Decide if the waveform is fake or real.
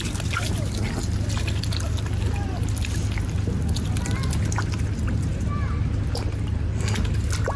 real